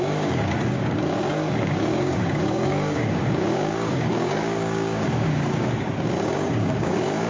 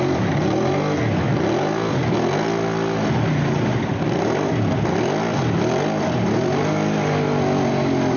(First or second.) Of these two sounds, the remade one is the first